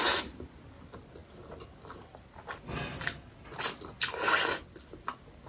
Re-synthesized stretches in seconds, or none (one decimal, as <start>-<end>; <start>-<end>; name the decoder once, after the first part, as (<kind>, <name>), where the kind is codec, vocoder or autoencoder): none